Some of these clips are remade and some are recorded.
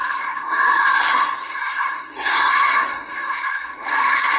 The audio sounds remade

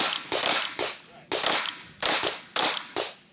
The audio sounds recorded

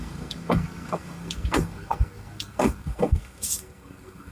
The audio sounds remade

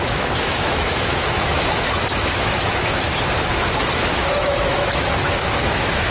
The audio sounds remade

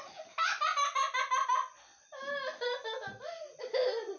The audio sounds recorded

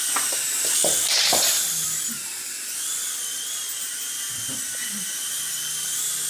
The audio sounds recorded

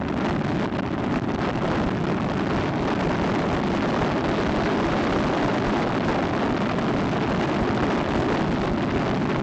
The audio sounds recorded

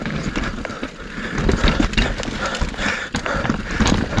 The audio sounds recorded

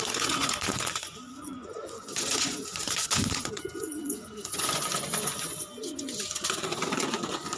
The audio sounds remade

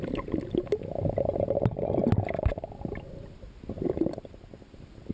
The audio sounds recorded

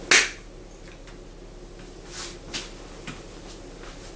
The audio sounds recorded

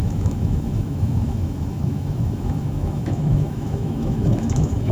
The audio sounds remade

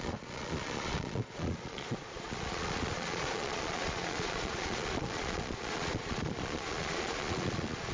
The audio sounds remade